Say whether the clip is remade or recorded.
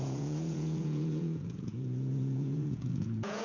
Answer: remade